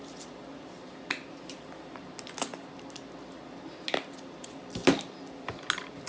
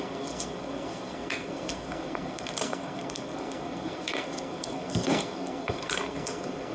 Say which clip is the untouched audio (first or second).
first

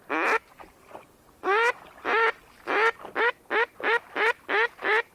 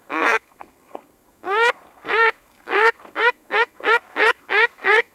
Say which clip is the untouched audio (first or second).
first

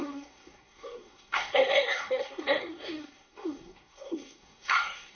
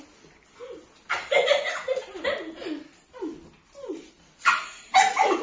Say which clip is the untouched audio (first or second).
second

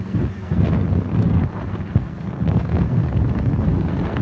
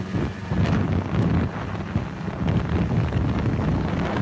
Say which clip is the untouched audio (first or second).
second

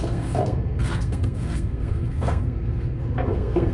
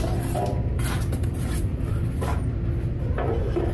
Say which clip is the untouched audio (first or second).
second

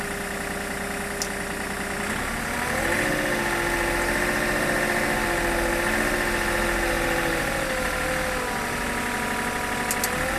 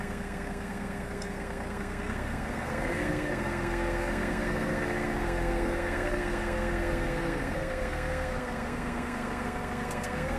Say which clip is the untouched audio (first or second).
first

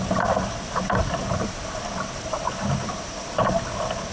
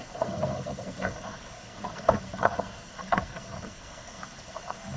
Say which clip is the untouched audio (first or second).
first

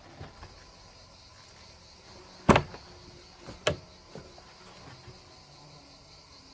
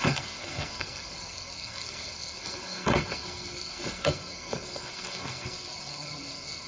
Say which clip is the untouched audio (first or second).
first